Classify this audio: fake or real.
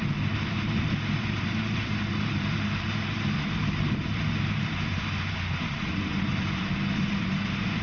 fake